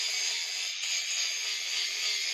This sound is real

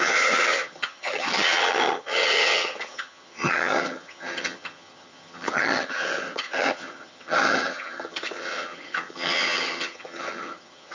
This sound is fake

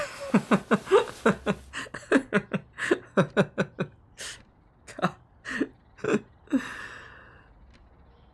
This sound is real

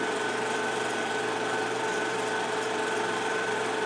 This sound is fake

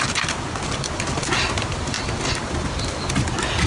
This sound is real